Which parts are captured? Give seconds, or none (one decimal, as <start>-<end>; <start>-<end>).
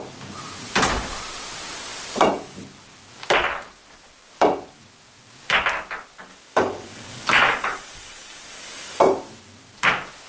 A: 0.0-6.3; 9.0-10.3